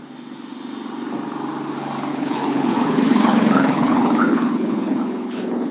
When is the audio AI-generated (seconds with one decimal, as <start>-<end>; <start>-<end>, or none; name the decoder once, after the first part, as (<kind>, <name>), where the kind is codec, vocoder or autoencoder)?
2.1-5.7 (codec, HILCodec)